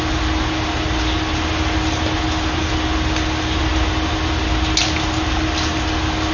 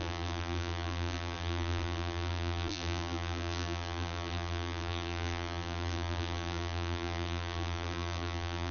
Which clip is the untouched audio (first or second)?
first